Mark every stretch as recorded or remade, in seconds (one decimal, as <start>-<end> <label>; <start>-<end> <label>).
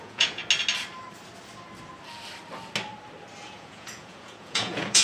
0.0-0.4 remade; 0.4-3.4 recorded; 3.4-5.0 remade